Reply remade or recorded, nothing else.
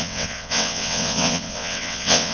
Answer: remade